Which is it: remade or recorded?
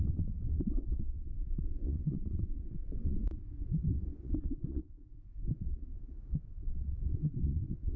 remade